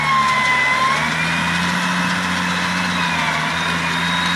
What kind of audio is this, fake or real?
real